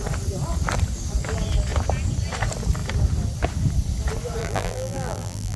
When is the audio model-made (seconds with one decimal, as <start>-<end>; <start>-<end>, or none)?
4.4-5.6